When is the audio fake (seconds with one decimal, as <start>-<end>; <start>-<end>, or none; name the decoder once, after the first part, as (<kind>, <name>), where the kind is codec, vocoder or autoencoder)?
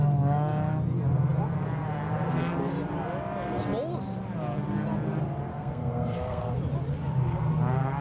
5.5-6.5 (codec, SNAC)